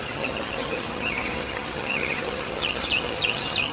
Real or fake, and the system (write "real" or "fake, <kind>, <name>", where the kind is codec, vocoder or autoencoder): fake, vocoder, HiFi-GAN